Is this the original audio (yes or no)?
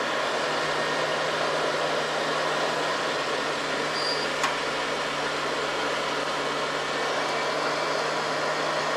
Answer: yes